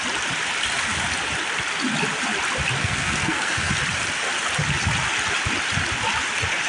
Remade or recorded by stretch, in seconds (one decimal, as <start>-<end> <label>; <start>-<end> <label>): 0.0-2.8 recorded; 2.8-3.7 remade; 3.7-6.7 recorded